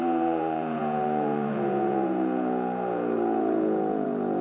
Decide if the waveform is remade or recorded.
remade